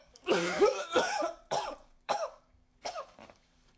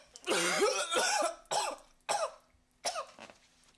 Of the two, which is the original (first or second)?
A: second